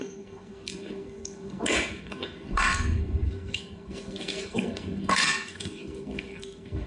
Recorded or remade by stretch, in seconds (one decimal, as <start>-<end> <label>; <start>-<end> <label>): 0.0-6.9 remade